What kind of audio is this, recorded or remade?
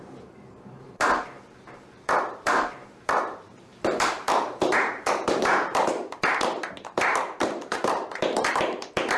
remade